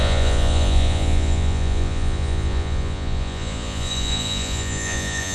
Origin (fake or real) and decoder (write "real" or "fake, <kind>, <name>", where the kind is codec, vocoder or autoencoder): fake, vocoder, Vocos